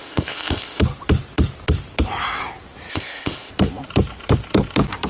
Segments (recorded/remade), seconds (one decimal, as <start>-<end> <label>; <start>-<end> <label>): 0.0-0.8 remade; 0.8-2.9 recorded; 2.9-3.5 remade; 3.5-5.1 recorded